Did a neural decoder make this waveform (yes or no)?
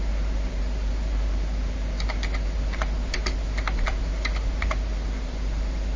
yes